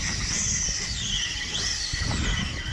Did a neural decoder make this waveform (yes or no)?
no